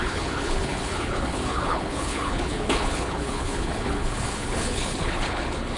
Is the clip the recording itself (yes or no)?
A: no